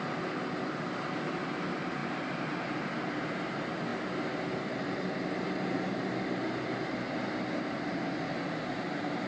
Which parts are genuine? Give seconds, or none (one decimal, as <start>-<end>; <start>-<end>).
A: 0.0-3.9; 6.0-9.3